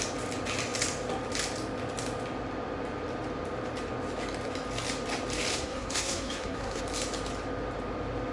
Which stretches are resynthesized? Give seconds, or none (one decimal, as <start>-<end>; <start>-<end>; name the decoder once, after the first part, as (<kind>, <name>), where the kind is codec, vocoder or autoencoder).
5.5-6.8 (codec, SNAC)